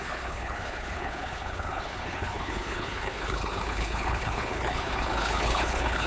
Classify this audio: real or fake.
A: fake